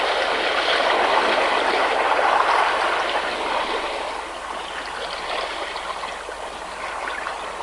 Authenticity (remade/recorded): recorded